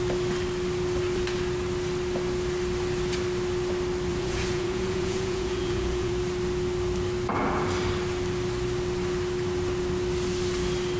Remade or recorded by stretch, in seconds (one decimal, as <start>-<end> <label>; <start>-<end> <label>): 0.0-4.1 recorded; 4.1-6.1 remade; 6.1-11.0 recorded

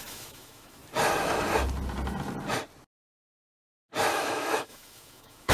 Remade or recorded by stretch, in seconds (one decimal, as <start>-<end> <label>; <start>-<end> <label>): 0.0-0.8 remade; 0.8-4.1 recorded; 4.1-5.5 remade

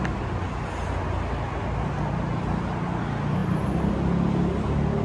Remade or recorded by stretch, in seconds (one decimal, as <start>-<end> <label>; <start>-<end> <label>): 0.0-5.0 recorded